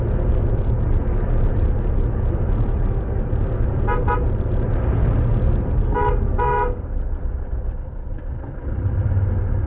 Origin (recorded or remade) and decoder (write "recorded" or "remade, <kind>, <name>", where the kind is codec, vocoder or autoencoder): recorded